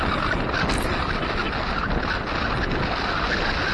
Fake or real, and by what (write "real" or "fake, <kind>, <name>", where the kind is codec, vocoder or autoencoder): real